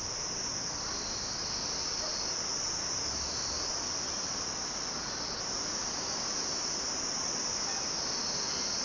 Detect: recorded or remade recorded